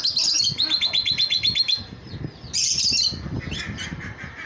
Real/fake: real